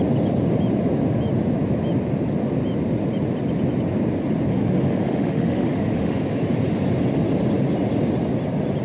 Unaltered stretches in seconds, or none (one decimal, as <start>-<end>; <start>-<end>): 0.0-4.5; 6.2-8.8